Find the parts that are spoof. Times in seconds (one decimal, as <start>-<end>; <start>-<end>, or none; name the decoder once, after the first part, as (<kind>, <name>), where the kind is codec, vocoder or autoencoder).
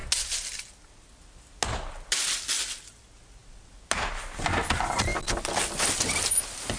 none